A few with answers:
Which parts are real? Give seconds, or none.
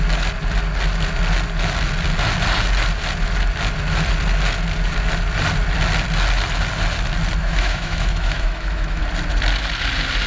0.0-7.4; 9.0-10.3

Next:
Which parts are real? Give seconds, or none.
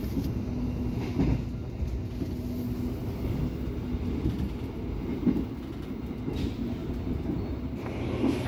0.0-8.5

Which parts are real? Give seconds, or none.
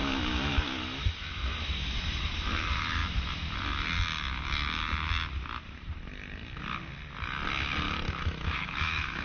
3.0-8.1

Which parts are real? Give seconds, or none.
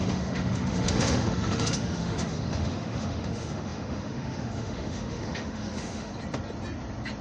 6.1-7.2